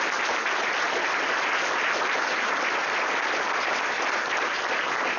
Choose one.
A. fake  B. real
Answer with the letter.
B